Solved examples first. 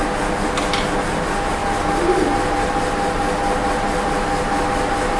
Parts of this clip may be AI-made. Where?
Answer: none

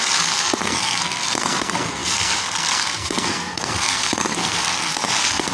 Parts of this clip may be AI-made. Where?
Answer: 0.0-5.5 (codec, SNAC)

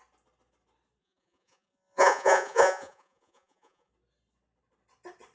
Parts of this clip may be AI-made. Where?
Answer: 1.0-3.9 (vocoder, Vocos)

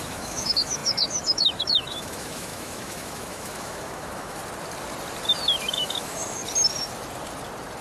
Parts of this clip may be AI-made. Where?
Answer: 0.0-4.4 (autoencoder, DAC-VAE); 5.7-6.4

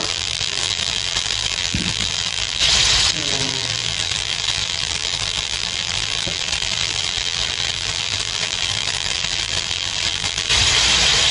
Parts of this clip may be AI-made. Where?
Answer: 0.0-2.6 (vocoder, BigVGAN v2); 3.1-10.5

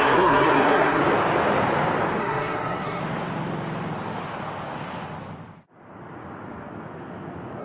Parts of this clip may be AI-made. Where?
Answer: 0.0-1.0 (codec, SNAC); 2.2-3.0

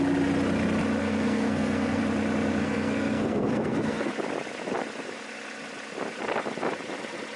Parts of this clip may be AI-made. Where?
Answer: 1.0-2.0 (codec, SNAC); 2.6-4.1

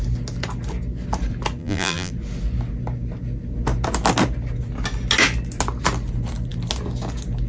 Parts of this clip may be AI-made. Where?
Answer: 1.6-2.1 (vocoder, BigVGAN v2)